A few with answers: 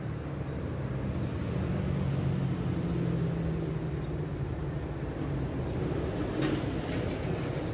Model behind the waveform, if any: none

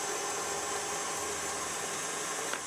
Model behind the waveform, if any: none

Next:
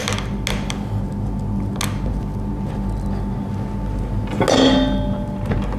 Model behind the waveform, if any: none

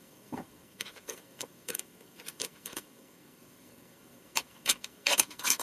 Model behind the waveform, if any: codec, SNAC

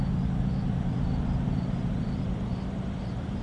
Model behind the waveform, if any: none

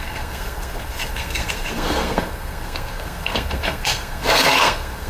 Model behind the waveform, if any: codec, SNAC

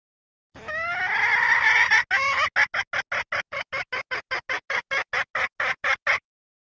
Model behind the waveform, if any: none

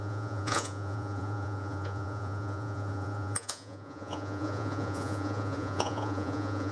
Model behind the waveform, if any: vocoder, Vocos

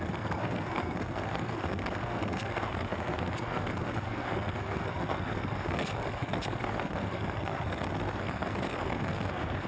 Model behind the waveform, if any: codec, SNAC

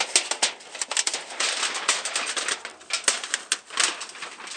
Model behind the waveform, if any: none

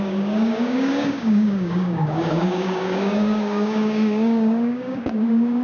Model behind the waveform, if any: codec, DAC